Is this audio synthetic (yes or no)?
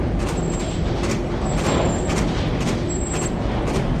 no